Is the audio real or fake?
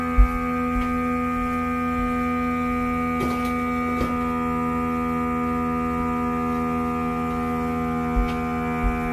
real